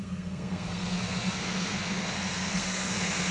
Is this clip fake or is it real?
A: fake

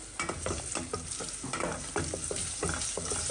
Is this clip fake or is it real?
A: real